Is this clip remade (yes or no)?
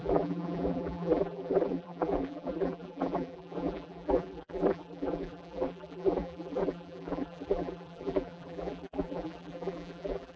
yes